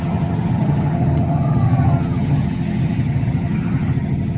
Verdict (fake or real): fake